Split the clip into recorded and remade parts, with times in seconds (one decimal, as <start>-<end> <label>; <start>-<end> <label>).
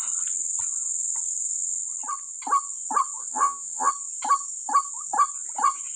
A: 0.0-3.2 recorded; 3.2-3.9 remade; 3.9-6.0 recorded